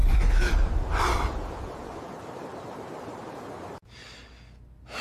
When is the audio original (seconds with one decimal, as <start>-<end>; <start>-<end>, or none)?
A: 1.0-2.5; 3.2-5.0